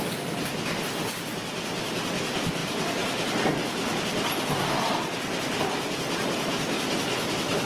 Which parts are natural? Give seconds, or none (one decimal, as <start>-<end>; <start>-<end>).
0.0-7.7

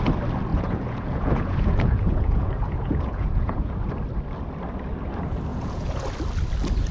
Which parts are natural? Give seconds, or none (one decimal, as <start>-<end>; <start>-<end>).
0.0-0.5; 3.7-5.5; 6.1-6.9

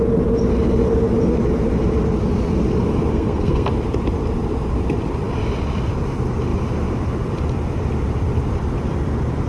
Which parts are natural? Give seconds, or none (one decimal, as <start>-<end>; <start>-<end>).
0.0-3.1; 3.7-9.5

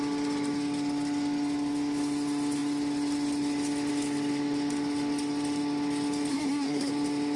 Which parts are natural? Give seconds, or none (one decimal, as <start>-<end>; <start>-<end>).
0.0-6.3; 6.9-7.4

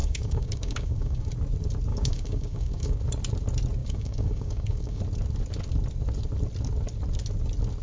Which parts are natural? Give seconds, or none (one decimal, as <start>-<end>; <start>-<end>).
1.3-1.9; 3.0-3.8; 5.0-7.8

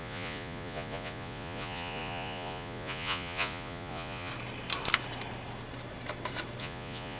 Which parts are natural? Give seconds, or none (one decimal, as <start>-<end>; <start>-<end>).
4.3-6.6

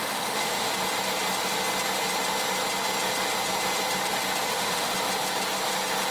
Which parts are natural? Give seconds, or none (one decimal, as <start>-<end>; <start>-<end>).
0.7-4.4; 4.9-6.1